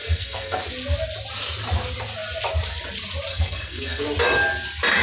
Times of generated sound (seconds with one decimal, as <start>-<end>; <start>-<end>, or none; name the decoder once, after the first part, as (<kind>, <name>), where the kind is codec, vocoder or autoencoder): 0.0-0.6 (codec, SNAC); 3.3-4.0